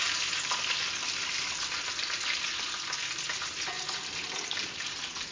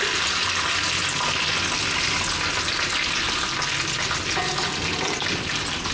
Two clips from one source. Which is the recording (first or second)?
second